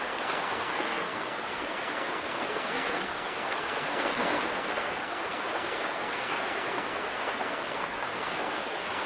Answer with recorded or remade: remade